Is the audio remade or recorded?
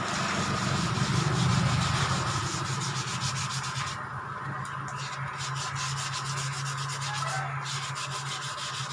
recorded